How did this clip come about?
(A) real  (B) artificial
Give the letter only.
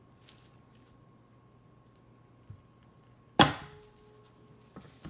A